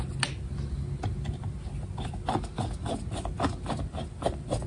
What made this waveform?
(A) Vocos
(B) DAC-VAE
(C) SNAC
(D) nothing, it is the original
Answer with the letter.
D